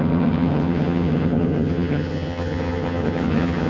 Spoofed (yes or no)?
yes